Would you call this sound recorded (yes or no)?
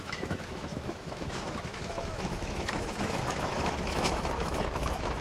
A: no